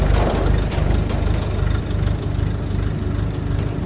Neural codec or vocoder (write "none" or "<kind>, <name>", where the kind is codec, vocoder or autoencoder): none